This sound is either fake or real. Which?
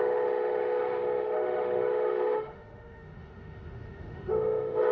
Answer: fake